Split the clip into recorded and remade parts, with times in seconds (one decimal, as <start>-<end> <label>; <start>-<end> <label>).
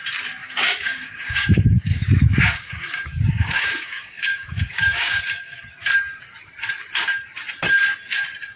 0.0-0.4 recorded; 0.4-5.6 remade; 5.6-8.6 recorded